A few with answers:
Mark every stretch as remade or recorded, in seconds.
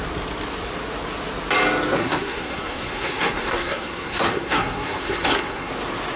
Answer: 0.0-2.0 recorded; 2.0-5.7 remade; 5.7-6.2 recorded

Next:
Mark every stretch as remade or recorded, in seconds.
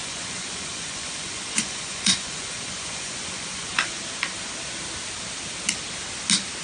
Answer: 0.0-4.0 remade; 4.0-6.6 recorded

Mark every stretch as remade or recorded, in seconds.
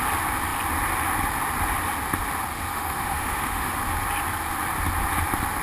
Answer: 0.0-2.7 recorded; 2.7-3.7 remade; 3.7-5.6 recorded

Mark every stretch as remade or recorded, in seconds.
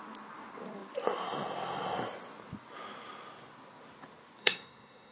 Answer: 0.0-4.4 recorded; 4.4-5.1 remade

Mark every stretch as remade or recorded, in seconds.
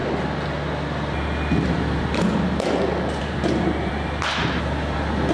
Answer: 0.0-3.2 recorded; 3.2-5.3 remade